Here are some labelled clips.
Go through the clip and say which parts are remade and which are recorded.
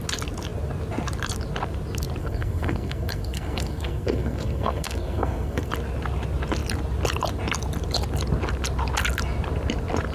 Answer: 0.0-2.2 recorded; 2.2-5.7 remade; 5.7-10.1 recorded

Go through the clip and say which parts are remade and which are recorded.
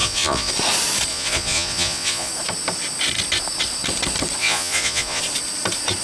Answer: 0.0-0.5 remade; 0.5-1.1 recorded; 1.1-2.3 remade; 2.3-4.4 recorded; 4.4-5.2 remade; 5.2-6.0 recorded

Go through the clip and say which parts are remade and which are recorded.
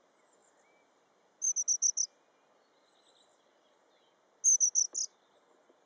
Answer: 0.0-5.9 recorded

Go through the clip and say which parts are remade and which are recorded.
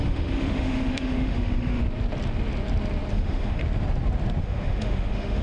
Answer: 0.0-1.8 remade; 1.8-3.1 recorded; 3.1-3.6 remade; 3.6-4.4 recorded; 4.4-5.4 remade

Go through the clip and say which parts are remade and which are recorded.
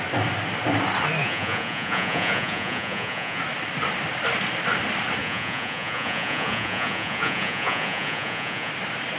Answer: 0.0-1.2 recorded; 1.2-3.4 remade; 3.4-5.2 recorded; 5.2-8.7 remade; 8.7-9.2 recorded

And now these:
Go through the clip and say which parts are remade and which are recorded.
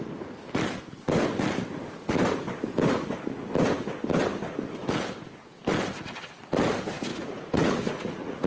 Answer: 0.0-7.1 recorded; 7.1-8.5 remade